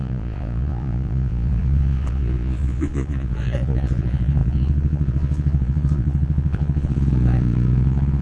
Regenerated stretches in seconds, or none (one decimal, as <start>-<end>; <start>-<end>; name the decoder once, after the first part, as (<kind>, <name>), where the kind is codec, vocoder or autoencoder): 0.0-8.2 (vocoder, Vocos)